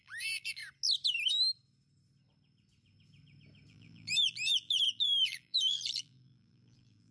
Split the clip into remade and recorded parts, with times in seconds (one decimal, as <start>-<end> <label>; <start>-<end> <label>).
0.0-0.6 remade; 0.6-3.7 recorded; 3.7-7.1 remade